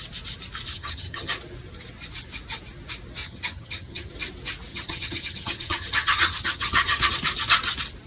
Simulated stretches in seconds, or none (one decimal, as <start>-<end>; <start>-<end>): 0.7-1.3; 3.2-4.1; 4.7-7.1